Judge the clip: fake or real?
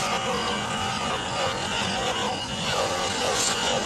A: fake